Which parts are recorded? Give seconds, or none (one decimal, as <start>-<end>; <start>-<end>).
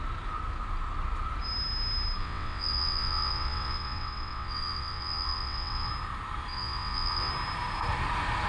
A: 0.0-2.2; 5.9-6.5; 7.3-8.5